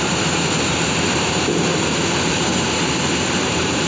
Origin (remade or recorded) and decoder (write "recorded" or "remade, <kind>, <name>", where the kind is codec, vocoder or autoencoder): remade, vocoder, BigVGAN v2